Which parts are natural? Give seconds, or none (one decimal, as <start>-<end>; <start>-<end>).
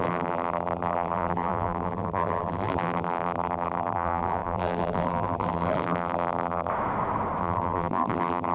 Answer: 6.7-7.4